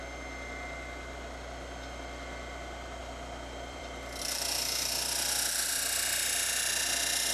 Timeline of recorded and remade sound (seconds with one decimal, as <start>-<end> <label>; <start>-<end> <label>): 0.0-3.0 recorded; 3.0-4.2 remade; 4.2-7.3 recorded